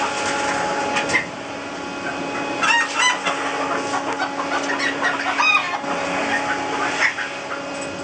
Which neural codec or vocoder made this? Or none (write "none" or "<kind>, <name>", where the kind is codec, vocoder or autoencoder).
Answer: none